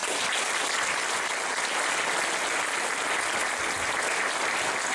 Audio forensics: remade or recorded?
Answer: recorded